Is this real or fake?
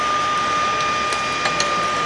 real